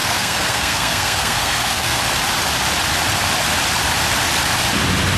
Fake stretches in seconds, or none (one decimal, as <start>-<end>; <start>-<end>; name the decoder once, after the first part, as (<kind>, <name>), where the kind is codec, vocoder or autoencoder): 0.0-2.0 (codec, SNAC)

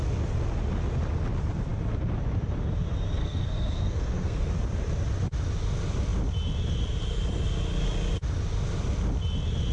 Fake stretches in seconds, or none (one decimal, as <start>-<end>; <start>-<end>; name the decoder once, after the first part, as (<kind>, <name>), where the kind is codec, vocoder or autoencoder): 3.2-4.5 (codec, SNAC)

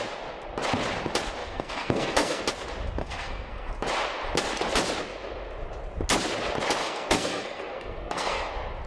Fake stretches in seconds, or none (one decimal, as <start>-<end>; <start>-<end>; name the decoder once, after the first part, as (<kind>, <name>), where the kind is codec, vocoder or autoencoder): 1.4-2.4 (codec, SNAC); 3.0-3.7; 6.8-8.5

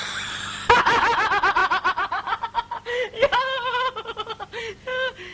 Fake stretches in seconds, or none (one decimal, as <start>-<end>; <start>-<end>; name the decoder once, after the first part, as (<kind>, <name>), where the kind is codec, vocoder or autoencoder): none

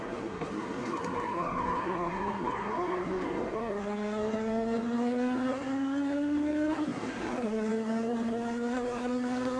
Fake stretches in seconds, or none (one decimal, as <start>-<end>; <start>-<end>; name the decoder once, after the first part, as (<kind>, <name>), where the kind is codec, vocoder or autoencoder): 0.0-9.6 (codec, SNAC)